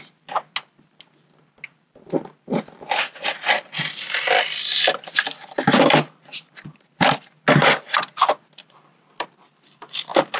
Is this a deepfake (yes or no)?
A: no